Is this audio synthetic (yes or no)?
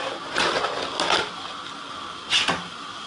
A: no